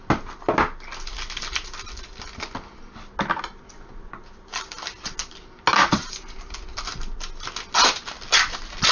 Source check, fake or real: real